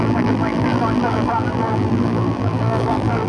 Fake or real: fake